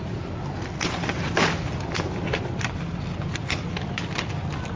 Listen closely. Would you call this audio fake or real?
real